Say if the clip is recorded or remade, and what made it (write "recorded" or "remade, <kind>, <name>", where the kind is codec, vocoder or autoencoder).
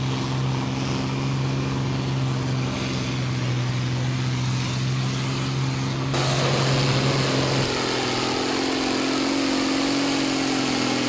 recorded